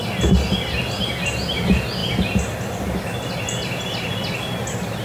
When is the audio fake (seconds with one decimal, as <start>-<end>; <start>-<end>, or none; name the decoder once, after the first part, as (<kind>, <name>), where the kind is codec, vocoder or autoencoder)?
none